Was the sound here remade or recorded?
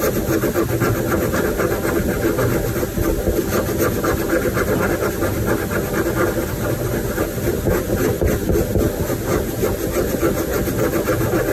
recorded